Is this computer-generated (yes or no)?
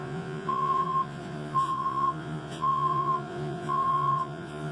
yes